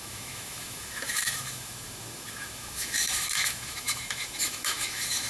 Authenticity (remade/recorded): remade